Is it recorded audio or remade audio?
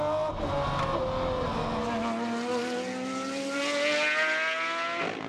recorded